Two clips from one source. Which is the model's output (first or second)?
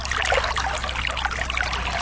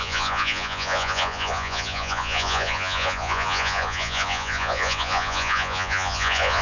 second